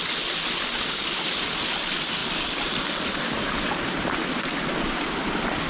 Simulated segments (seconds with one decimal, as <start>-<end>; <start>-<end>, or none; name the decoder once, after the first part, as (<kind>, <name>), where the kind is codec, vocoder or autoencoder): none